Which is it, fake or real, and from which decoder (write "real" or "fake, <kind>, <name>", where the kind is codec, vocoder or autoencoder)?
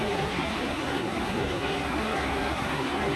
fake, codec, SNAC